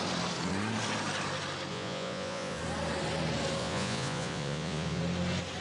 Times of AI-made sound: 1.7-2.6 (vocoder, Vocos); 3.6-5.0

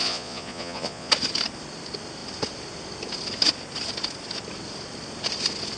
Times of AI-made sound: 0.0-1.1 (vocoder, Vocos)

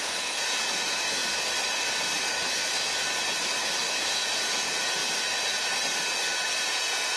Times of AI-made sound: 0.0-1.2 (vocoder, Vocos); 4.0-5.0; 6.6-7.2

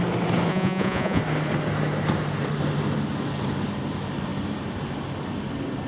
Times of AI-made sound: 0.5-1.2 (vocoder, Vocos)

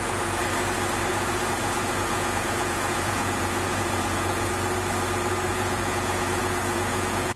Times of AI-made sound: 0.0-0.4 (vocoder, Vocos); 1.1-4.5; 5.5-7.4

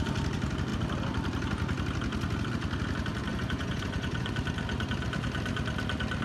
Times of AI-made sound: 3.3-4.3 (vocoder, Vocos)

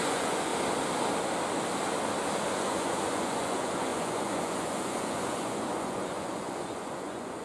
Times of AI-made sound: 0.0-0.5 (vocoder, Vocos); 2.5-7.4

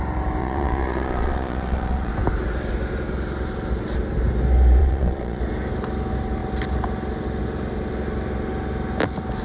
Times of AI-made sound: 0.4-2.1 (vocoder, Vocos); 4.8-5.4